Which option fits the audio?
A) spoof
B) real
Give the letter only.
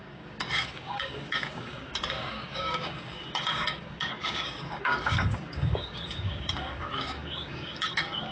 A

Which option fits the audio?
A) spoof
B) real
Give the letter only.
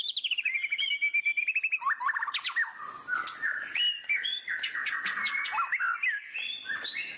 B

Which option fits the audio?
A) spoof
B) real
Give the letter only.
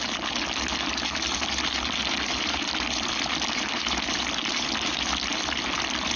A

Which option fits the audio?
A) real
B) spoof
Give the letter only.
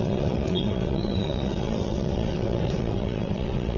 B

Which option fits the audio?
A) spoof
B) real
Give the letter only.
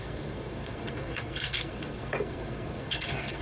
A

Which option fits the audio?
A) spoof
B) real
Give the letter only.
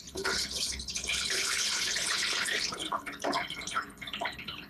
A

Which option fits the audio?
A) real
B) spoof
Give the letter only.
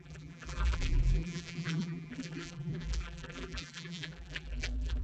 B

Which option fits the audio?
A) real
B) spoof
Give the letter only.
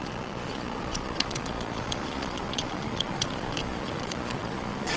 B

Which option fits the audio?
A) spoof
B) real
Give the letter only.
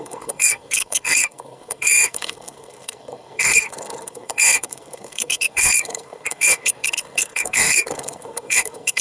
A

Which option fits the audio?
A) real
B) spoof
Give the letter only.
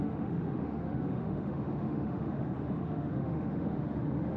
B